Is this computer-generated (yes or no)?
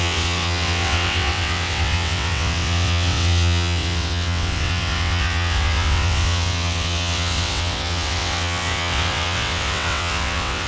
yes